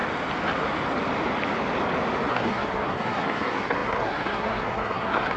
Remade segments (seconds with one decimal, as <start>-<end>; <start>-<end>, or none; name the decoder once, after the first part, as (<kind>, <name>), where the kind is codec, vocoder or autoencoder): 2.3-5.4 (codec, SNAC)

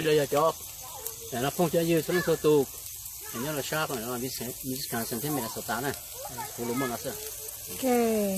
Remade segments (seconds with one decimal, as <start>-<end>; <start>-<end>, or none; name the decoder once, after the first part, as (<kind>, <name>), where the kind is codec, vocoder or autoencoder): none

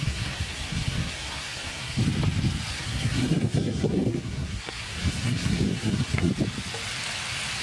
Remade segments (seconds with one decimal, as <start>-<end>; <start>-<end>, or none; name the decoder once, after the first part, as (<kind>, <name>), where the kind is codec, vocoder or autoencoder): 0.0-2.0 (codec, SNAC); 2.7-6.3

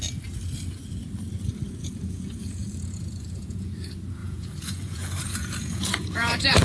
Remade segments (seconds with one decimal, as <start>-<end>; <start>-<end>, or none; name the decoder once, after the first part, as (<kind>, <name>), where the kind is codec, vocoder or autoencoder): 1.8-3.7 (vocoder, Vocos); 4.2-6.6

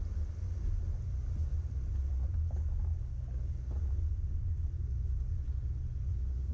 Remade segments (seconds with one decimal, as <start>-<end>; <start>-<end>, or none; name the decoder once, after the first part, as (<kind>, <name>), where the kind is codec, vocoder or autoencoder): none

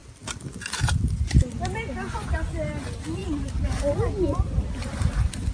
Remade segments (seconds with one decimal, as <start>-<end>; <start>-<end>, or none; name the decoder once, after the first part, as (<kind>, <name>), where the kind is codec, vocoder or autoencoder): none

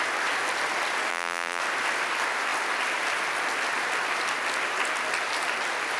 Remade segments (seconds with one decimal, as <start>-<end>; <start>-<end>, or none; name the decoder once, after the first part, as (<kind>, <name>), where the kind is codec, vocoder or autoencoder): 1.1-1.6 (vocoder, BigVGAN v2)

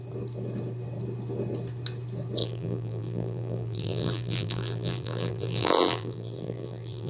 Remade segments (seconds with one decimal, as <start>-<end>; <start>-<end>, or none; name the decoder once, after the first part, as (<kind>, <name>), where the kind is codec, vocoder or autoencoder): 2.4-7.1 (vocoder, BigVGAN v2)